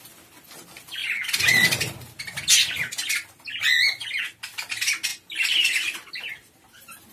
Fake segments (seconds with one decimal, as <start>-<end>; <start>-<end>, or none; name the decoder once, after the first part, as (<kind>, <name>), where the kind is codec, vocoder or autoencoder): none